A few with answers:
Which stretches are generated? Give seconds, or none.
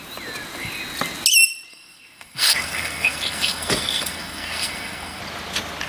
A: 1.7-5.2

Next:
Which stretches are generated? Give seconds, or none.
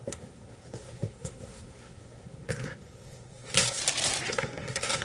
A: 0.0-3.8; 4.3-5.0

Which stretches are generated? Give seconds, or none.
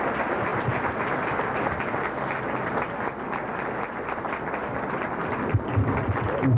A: none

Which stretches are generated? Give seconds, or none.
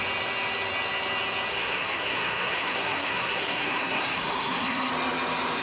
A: 1.5-4.9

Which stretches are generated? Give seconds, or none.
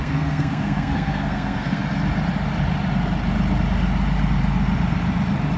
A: 0.0-1.8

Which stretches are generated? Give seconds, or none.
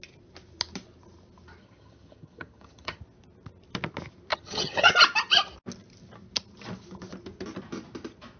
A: 1.6-3.0; 4.3-4.9